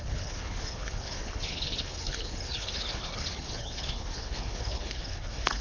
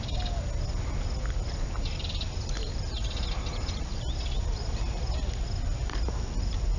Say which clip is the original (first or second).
second